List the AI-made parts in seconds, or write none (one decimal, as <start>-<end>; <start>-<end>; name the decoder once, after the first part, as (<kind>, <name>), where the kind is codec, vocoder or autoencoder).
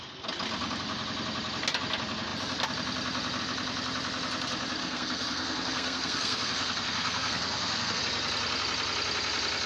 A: 4.8-8.0 (codec, SNAC)